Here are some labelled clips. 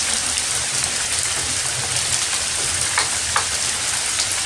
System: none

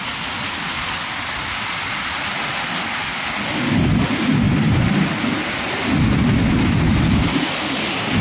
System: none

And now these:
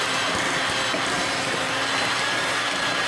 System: none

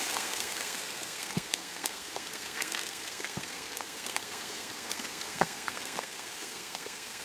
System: codec, SNAC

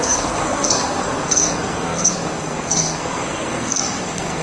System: codec, SNAC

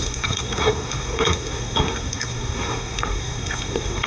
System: codec, SNAC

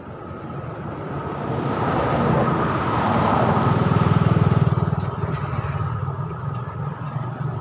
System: none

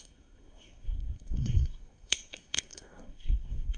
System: codec, SNAC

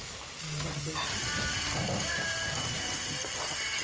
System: none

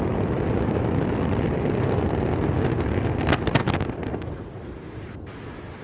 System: none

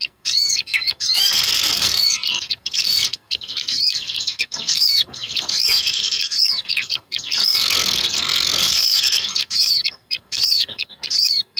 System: codec, SNAC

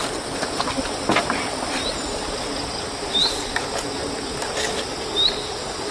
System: none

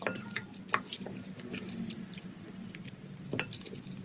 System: none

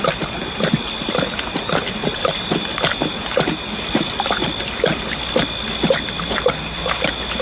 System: none